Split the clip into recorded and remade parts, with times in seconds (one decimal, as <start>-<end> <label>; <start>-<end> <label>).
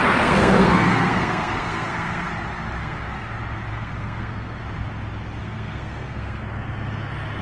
0.0-2.3 remade; 2.3-2.8 recorded; 2.8-3.3 remade; 3.3-3.7 recorded; 3.7-4.6 remade; 4.6-5.4 recorded; 5.4-6.4 remade; 6.4-7.4 recorded